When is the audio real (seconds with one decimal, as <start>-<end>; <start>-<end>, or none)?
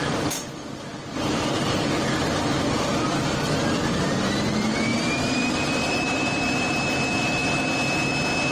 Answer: 2.9-4.5; 7.4-8.5